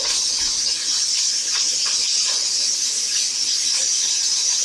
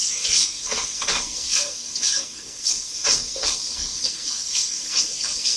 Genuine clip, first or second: first